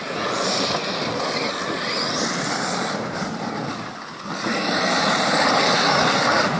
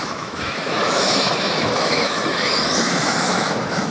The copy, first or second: second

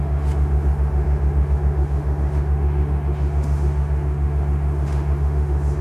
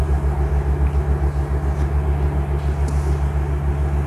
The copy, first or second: first